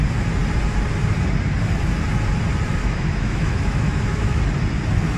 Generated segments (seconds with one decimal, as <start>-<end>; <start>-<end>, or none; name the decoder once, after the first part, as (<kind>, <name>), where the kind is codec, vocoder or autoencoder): 2.8-4.4 (autoencoder, DAC-VAE)